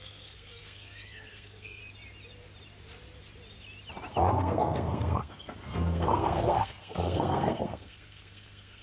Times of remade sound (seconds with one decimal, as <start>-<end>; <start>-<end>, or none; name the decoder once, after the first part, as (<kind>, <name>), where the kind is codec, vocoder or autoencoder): 0.0-1.8 (codec, SNAC); 4.3-8.8